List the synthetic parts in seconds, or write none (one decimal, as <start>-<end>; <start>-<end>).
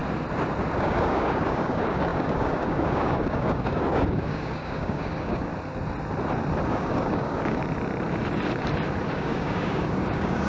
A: 0.8-5.5; 6.7-7.6; 9.1-10.5